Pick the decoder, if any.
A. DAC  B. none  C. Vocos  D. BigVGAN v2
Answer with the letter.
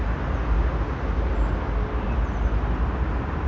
B